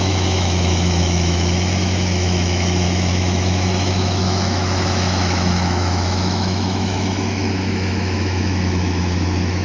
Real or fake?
fake